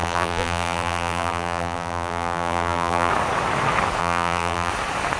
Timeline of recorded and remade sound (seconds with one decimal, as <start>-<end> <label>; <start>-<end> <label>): 0.0-3.1 remade; 3.1-4.0 recorded; 4.0-4.7 remade; 4.7-5.2 recorded